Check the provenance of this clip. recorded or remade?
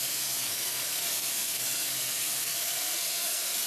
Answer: remade